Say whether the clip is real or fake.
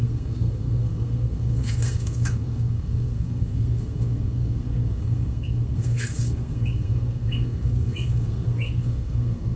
fake